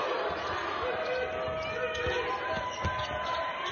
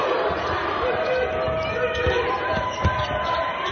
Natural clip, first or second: first